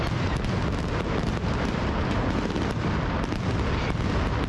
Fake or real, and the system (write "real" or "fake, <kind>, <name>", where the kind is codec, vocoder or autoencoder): real